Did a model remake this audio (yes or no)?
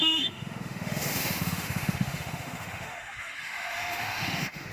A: yes